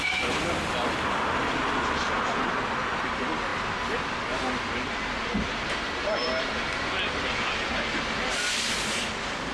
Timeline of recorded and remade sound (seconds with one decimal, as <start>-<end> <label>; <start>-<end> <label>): 0.0-9.5 recorded